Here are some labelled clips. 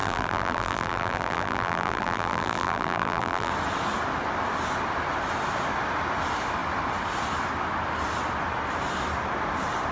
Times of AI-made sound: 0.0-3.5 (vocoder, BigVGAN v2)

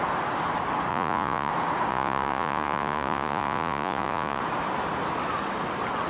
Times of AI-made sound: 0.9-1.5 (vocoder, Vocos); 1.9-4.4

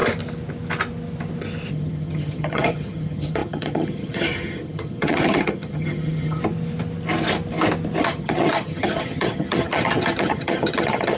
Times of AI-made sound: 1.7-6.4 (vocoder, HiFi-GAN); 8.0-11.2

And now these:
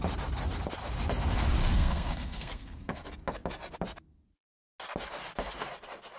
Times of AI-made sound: 1.6-3.0 (codec, SNAC)

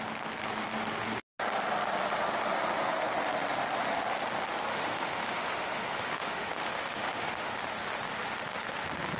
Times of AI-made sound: 4.7-7.5 (autoencoder, DAC-VAE)

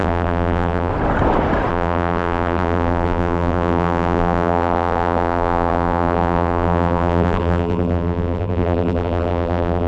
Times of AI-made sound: 0.0-0.9 (vocoder, BigVGAN v2); 1.7-9.9

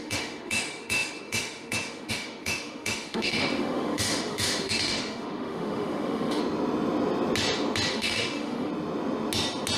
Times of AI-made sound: 0.0-6.4 (autoencoder, DAC-VAE); 7.9-8.7

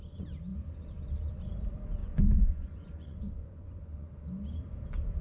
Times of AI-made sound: 2.0-4.1 (vocoder, Vocos)